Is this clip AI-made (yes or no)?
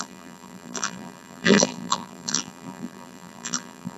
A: yes